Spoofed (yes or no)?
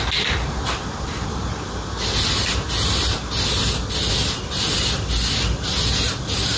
no